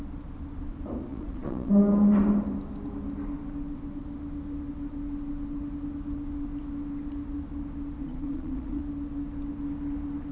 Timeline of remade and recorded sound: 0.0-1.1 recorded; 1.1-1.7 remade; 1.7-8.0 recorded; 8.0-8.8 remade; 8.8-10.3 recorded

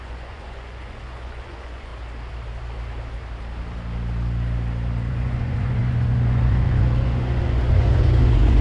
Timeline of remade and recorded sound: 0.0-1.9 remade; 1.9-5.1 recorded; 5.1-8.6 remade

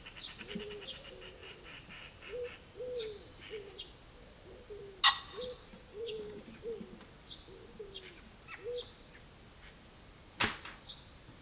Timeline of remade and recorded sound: 0.0-5.9 recorded; 5.9-6.4 remade; 6.4-11.4 recorded